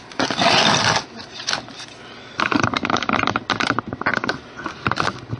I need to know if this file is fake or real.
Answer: real